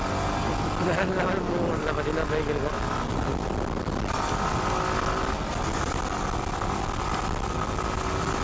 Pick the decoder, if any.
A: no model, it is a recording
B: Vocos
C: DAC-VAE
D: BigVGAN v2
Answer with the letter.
A